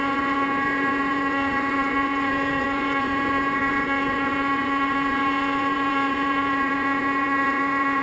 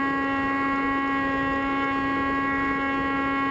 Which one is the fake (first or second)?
first